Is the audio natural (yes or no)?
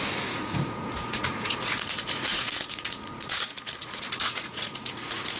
no